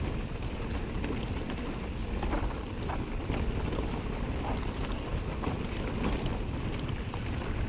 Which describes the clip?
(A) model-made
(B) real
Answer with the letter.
B